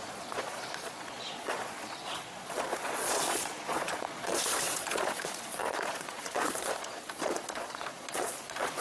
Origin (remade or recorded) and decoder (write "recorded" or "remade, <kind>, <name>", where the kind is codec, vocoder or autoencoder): remade, vocoder, Vocos